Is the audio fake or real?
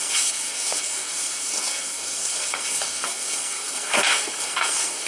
fake